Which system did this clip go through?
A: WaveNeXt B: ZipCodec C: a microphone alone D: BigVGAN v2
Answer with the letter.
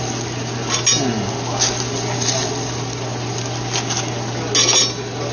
C